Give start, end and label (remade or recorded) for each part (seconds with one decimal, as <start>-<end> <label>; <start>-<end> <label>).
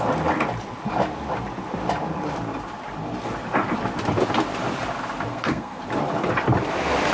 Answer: 0.0-5.3 recorded; 5.3-5.8 remade; 5.8-7.1 recorded